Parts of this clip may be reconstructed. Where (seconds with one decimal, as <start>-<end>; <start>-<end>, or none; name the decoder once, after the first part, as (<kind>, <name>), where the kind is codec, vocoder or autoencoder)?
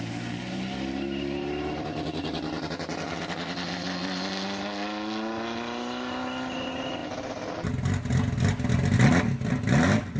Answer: none